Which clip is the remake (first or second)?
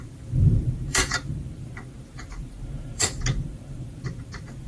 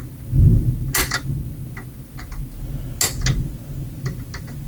first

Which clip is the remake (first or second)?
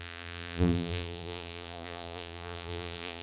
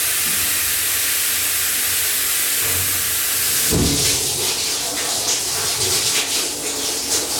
first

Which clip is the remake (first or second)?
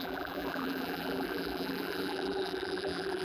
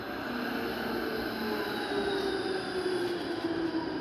first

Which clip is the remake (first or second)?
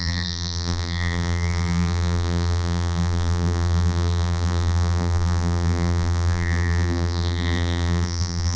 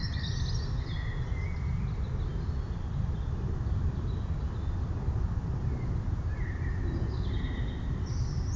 first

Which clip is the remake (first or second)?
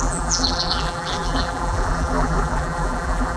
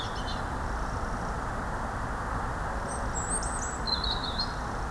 first